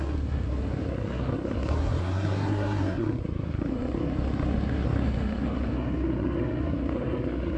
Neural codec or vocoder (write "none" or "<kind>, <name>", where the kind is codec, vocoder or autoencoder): codec, SNAC